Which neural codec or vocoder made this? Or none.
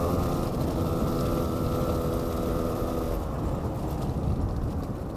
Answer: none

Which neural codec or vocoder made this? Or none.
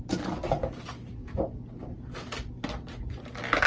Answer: none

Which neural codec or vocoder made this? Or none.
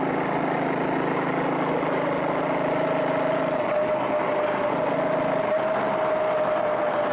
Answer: none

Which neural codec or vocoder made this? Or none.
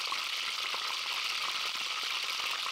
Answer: none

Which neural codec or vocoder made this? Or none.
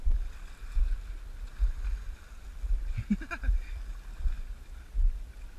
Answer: none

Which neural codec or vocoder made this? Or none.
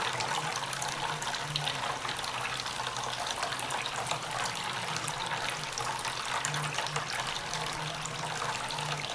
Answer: none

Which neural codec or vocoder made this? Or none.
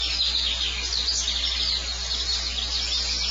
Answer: none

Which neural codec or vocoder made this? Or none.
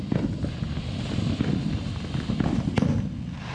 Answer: none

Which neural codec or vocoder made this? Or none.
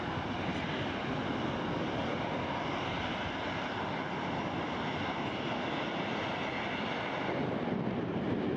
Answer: none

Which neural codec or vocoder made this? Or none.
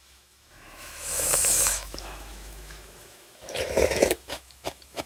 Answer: autoencoder, DAC-VAE